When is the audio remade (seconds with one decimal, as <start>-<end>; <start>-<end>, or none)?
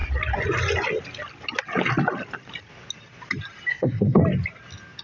3.7-4.2